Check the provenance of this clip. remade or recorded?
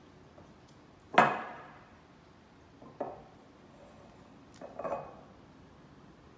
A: recorded